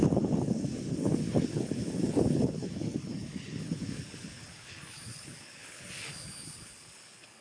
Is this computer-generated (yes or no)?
yes